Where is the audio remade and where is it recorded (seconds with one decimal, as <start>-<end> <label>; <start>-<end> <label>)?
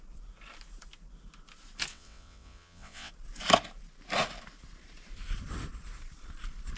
0.0-1.9 recorded; 1.9-3.1 remade; 3.1-6.8 recorded